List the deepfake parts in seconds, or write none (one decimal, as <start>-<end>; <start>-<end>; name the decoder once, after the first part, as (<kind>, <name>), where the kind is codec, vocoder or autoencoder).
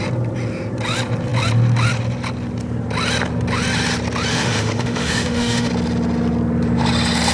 4.3-5.7 (autoencoder, DAC-VAE)